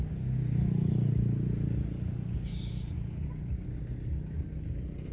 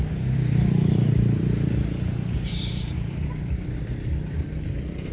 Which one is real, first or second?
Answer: first